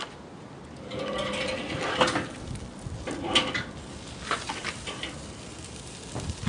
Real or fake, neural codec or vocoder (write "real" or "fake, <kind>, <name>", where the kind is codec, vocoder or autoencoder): real